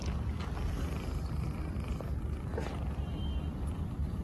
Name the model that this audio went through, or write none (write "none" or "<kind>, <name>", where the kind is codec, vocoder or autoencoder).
vocoder, BigVGAN v2